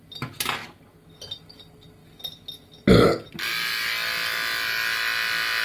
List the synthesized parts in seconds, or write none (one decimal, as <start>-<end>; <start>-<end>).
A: none